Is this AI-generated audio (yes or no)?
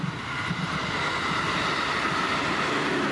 no